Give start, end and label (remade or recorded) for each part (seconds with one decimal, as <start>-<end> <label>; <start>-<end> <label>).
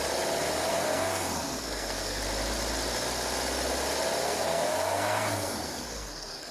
0.0-0.7 recorded; 0.7-2.2 remade; 2.2-4.2 recorded; 4.2-6.5 remade